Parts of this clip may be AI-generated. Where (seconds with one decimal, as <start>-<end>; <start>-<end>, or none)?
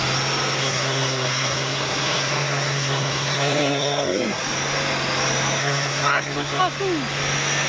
0.6-4.4; 5.6-6.6